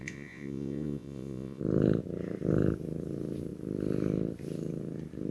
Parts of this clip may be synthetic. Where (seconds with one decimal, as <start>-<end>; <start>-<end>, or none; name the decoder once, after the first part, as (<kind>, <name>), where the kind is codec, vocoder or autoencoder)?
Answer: 0.0-1.6 (vocoder, Vocos)